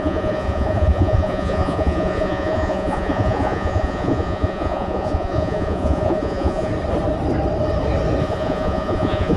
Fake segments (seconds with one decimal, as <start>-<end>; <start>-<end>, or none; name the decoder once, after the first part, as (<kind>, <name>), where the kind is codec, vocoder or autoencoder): 0.0-6.7 (vocoder, Vocos); 8.2-9.4